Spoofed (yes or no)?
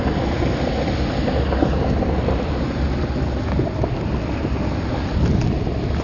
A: no